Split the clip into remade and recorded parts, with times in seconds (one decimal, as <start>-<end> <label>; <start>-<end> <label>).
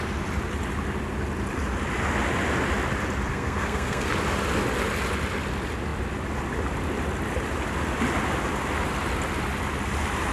0.0-3.3 recorded; 3.3-4.1 remade; 4.1-10.3 recorded